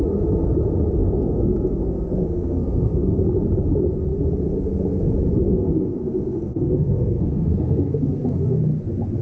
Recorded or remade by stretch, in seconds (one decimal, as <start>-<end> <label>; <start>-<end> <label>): 0.0-1.0 recorded; 1.0-3.2 remade; 3.2-5.5 recorded; 5.5-8.6 remade; 8.6-9.2 recorded